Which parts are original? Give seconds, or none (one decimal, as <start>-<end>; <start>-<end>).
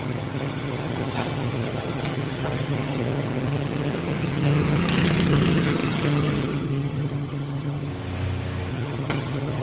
7.9-8.7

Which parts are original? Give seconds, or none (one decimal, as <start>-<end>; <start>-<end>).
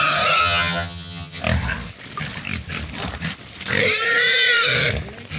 0.0-0.4; 1.4-5.4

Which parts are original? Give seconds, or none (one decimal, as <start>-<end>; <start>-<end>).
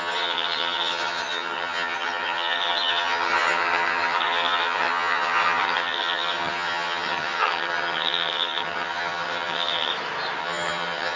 9.9-10.4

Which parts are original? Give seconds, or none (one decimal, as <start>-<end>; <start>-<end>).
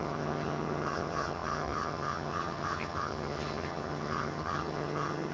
none